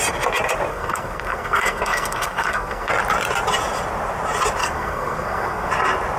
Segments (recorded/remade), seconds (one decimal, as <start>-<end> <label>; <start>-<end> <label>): 0.0-0.7 recorded; 0.7-2.9 remade; 2.9-4.6 recorded; 4.6-5.7 remade; 5.7-6.2 recorded

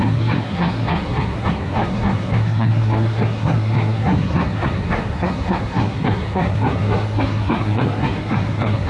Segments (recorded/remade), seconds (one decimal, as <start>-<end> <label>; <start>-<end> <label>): 0.0-8.9 remade

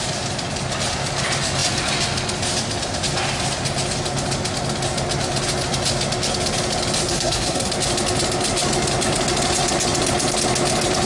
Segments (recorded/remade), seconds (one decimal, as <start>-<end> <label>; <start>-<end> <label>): 0.0-7.1 recorded; 7.1-7.7 remade; 7.7-11.1 recorded

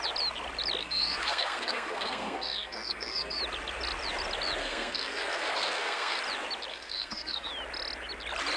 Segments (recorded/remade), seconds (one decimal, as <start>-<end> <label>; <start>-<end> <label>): 0.0-0.8 recorded; 0.8-3.4 remade; 3.4-4.6 recorded; 4.6-6.2 remade; 6.2-6.7 recorded; 6.7-7.5 remade; 7.5-8.6 recorded